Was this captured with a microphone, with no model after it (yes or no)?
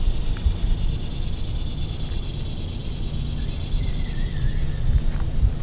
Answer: yes